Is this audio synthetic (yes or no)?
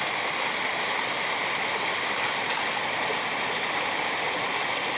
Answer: no